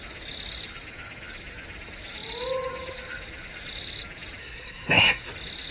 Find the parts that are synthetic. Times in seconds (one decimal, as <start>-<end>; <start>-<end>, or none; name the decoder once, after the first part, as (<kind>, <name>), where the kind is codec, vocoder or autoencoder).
4.4-5.3 (codec, SNAC)

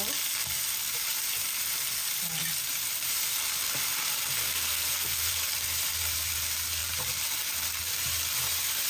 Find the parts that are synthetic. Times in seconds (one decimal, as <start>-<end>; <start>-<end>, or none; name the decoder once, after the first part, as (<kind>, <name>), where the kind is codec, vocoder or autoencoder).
4.4-5.3 (codec, SNAC)

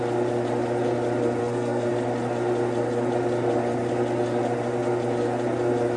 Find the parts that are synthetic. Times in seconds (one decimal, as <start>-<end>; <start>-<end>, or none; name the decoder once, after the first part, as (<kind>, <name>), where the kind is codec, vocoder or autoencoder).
1.4-1.9 (codec, SNAC)

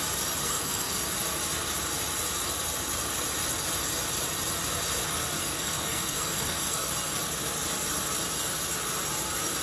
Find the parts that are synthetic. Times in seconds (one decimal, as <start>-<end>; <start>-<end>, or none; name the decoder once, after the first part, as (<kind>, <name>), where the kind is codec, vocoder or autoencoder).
0.4-1.0 (codec, SNAC); 5.4-6.9

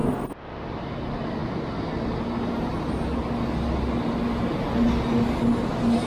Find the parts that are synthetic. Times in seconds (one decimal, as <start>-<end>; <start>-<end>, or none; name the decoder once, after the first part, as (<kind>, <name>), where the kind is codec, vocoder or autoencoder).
none

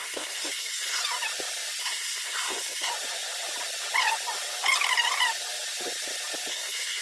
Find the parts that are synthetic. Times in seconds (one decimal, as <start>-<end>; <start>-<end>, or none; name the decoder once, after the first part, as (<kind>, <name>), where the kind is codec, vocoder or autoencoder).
0.0-1.0 (codec, SNAC); 1.8-2.9; 6.5-7.0